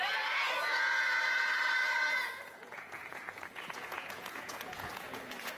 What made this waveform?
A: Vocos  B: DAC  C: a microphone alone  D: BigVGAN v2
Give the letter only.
A